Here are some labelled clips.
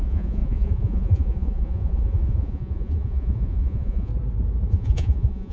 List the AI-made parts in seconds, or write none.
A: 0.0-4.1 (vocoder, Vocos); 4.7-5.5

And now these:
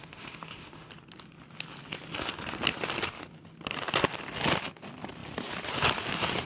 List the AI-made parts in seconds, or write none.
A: 0.0-0.9 (autoencoder, DAC-VAE)

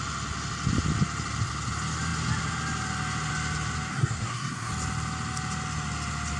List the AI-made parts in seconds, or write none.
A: 3.9-4.7 (codec, SNAC)

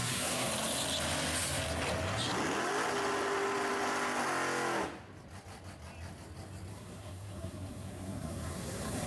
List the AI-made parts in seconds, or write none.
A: 0.0-0.5 (codec, SNAC); 6.7-9.1

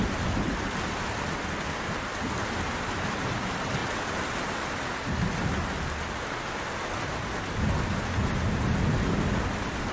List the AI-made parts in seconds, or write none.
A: none